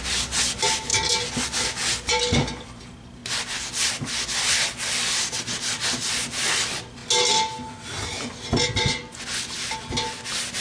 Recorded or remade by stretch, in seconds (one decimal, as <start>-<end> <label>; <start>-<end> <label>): 0.0-10.6 recorded

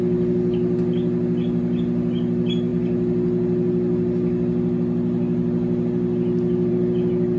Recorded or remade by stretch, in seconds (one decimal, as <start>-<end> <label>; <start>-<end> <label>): 0.0-7.4 recorded

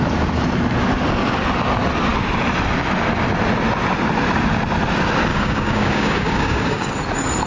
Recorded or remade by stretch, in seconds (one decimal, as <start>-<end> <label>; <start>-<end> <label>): 0.0-5.3 recorded; 5.3-6.9 remade; 6.9-7.5 recorded

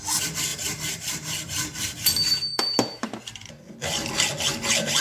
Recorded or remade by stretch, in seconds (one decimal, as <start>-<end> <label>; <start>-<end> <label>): 0.0-0.5 recorded; 0.5-3.5 remade; 3.5-5.0 recorded

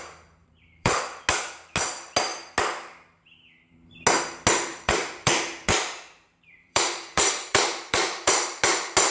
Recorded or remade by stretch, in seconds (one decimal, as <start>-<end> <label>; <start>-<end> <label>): 0.0-0.4 recorded; 0.4-1.0 remade; 1.0-4.7 recorded; 4.7-8.6 remade; 8.6-9.1 recorded